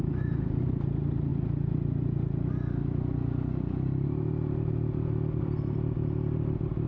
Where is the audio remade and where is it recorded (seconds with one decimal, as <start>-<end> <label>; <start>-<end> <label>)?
0.0-1.3 remade; 1.3-5.4 recorded; 5.4-6.9 remade